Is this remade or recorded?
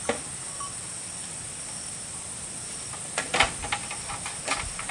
recorded